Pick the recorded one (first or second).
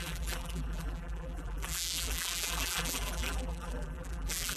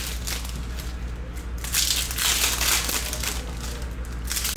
second